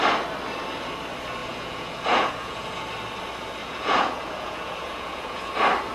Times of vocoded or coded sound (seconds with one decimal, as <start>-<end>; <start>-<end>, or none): 1.4-2.9; 3.6-5.5